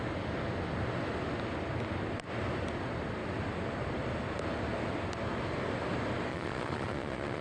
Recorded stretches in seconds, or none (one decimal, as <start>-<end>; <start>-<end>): 0.0-6.3